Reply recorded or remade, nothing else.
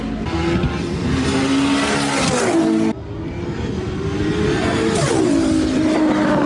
recorded